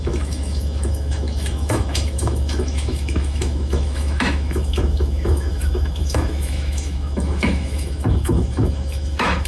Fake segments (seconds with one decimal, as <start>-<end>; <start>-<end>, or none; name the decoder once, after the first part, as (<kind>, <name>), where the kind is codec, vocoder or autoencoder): 0.0-9.5 (autoencoder, DAC-VAE)

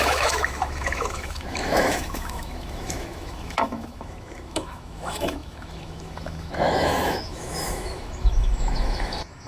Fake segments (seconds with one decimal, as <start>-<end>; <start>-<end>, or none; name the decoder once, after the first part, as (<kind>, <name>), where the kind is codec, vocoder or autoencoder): 0.0-9.5 (autoencoder, DAC-VAE)

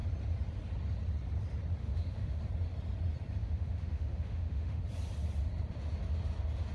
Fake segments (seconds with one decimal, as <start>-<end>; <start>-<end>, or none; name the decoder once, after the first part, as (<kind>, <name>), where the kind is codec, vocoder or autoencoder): 1.8-2.4 (autoencoder, DAC-VAE); 3.4-4.8

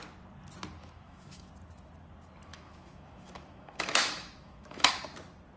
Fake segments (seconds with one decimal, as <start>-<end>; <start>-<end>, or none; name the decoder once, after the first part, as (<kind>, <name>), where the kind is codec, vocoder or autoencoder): 0.8-1.5 (autoencoder, DAC-VAE); 2.5-4.9